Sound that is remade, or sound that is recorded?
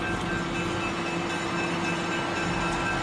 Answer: recorded